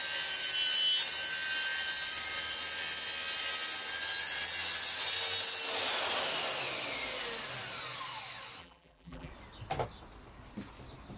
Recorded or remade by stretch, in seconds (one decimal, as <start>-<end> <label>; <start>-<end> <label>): 0.0-8.6 recorded; 8.6-9.3 remade; 9.3-11.2 recorded